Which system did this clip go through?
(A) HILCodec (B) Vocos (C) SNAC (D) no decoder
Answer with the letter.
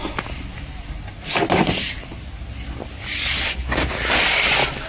D